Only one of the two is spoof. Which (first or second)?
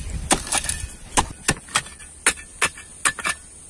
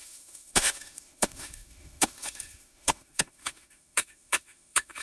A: second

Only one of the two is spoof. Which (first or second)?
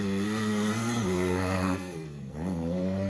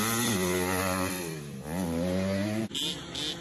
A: first